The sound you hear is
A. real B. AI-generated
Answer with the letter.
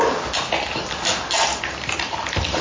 A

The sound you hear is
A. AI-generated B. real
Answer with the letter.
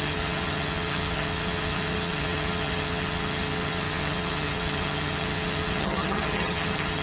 A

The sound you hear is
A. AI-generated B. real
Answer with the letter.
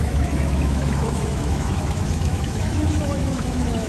A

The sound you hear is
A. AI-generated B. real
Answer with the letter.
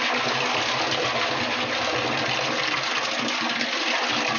B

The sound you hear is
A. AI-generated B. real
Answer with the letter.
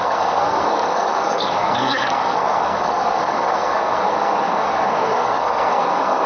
A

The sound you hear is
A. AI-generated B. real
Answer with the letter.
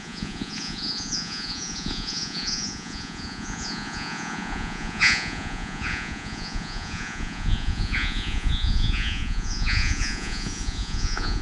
A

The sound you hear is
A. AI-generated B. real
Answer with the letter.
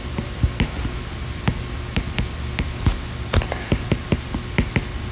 B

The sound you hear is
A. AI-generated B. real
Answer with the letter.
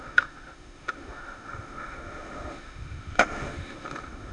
A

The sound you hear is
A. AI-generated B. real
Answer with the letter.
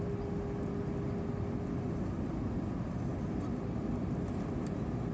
B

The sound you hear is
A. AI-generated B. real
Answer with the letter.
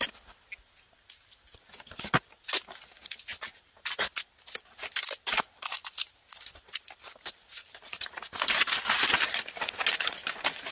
B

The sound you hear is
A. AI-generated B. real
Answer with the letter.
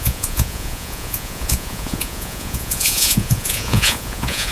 A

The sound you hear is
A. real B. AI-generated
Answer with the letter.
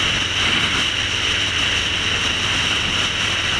A